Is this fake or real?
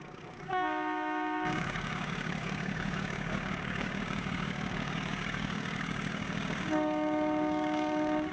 fake